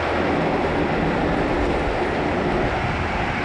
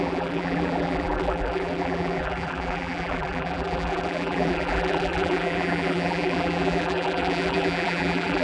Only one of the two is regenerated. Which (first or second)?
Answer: second